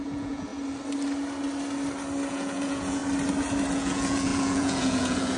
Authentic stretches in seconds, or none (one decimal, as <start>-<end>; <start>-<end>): 0.5-2.3; 3.0-3.7